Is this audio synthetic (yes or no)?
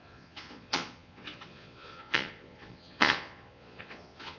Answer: yes